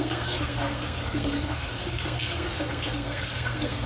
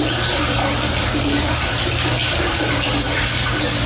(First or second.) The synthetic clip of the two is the first